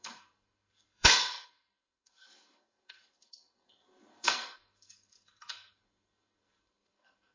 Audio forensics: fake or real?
fake